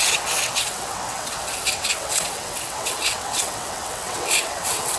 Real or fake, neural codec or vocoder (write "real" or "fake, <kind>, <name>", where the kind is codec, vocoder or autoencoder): fake, vocoder, WaveNeXt